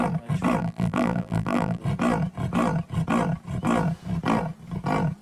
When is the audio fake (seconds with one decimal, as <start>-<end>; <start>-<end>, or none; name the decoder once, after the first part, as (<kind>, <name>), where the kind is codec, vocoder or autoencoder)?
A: 0.6-1.8 (vocoder, BigVGAN v2)